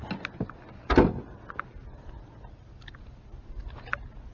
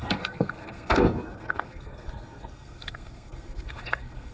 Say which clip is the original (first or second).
first